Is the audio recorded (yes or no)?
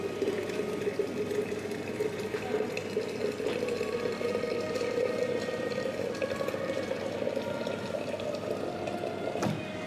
yes